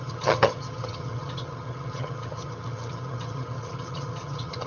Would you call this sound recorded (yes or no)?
no